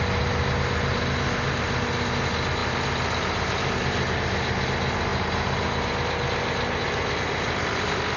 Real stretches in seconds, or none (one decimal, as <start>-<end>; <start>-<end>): 0.0-8.2